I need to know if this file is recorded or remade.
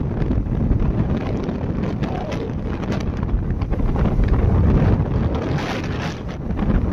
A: recorded